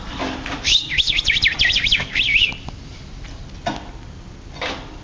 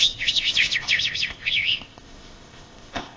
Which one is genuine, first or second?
first